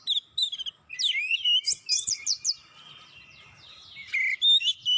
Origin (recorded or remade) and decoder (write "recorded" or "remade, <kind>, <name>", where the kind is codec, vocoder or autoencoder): recorded